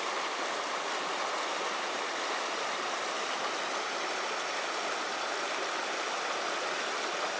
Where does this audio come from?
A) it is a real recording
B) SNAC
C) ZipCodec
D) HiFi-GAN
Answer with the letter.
A